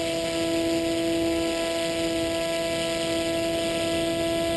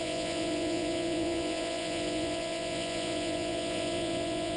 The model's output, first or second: second